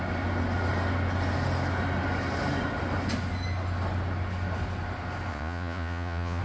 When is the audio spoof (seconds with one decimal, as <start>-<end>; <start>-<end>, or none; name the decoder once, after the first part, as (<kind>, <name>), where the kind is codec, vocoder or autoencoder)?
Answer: 5.3-6.4 (vocoder, Vocos)